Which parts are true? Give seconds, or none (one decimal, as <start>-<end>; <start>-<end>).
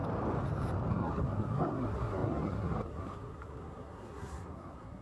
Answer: 0.0-0.9